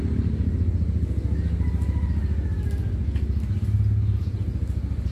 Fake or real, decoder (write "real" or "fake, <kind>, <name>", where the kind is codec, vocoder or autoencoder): real